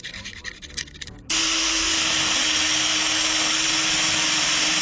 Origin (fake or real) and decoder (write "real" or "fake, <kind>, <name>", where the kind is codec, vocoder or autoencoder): real